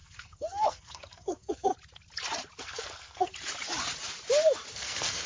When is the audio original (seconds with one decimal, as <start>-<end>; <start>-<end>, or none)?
1.7-2.6; 3.3-4.7